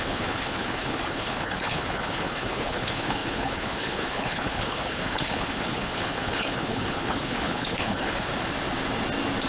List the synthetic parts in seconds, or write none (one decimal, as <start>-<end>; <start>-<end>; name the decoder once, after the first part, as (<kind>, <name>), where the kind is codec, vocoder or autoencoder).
0.0-8.3 (codec, HILCodec)